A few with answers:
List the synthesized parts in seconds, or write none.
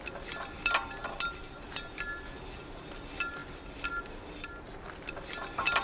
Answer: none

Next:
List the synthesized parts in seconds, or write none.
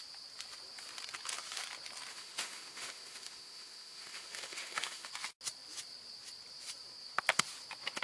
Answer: 2.1-5.1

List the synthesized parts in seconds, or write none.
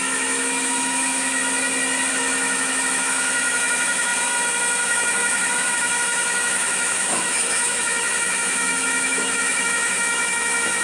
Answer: 0.0-1.4; 2.1-10.8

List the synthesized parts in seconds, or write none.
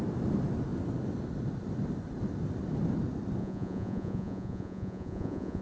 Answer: 3.4-5.6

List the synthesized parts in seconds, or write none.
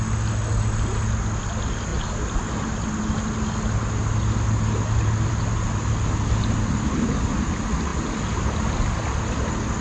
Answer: none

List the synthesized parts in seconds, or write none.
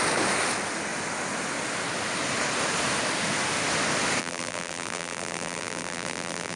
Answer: 4.2-6.6